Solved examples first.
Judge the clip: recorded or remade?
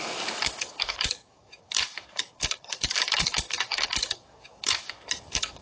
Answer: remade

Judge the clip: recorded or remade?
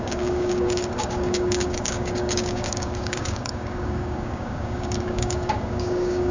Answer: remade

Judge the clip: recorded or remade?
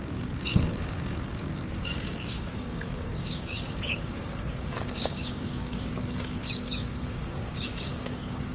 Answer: remade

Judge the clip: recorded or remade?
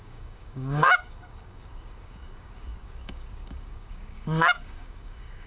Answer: remade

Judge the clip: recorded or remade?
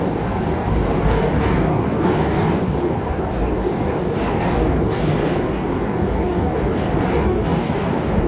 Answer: remade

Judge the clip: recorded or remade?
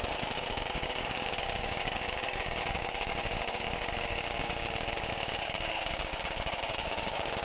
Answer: remade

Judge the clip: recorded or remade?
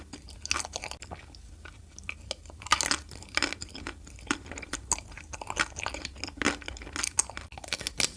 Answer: recorded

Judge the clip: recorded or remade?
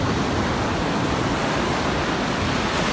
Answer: recorded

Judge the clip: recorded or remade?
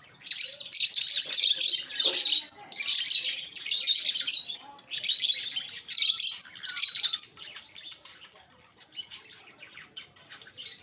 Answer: recorded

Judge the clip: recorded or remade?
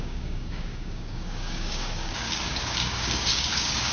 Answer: remade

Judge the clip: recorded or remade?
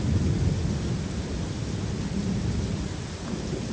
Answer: recorded